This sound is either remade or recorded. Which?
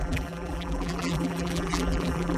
remade